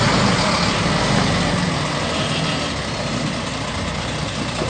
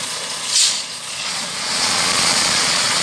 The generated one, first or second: second